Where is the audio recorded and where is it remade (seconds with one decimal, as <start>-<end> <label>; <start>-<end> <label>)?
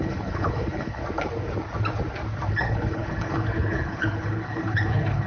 0.0-1.0 remade; 1.0-2.5 recorded; 2.5-5.3 remade